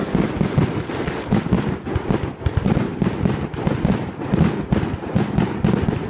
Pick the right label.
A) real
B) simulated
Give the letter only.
A